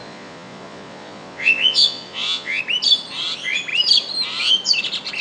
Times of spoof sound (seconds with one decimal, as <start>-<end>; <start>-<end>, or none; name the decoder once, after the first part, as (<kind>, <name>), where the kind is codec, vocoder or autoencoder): 0.0-2.6 (vocoder, Vocos)